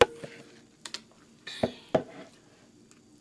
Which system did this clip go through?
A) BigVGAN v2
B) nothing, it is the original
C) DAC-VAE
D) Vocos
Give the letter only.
B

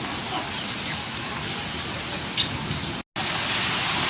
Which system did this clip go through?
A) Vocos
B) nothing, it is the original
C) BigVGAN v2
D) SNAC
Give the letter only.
B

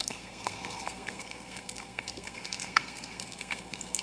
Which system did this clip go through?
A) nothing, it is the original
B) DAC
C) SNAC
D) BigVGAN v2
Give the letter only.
C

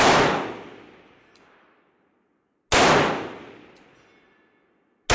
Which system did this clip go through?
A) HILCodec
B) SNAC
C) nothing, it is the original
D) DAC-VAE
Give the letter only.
C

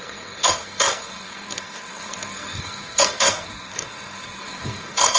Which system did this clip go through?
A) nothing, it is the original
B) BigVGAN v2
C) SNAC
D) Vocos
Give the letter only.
C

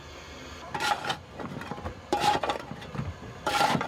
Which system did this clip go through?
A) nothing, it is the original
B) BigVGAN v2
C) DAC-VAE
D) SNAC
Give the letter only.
B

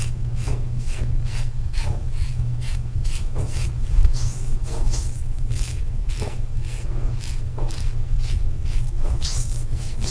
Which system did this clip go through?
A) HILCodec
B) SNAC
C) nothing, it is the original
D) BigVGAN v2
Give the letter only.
B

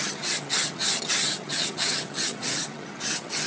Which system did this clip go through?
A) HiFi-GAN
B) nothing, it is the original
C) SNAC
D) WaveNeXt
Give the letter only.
A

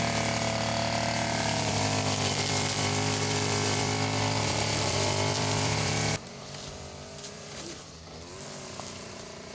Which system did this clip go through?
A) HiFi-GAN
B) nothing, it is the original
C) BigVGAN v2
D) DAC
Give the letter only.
C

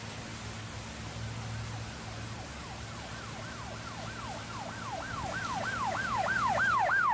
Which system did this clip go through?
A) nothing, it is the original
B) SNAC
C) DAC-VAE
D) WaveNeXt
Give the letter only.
A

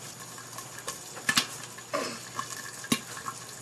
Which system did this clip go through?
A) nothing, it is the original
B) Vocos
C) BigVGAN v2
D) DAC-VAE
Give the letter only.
A